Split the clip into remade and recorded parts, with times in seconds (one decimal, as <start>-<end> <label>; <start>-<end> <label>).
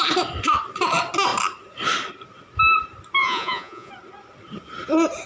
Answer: 0.0-3.2 recorded; 3.2-3.9 remade; 3.9-5.3 recorded